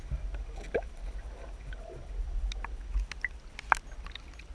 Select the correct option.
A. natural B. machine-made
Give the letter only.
A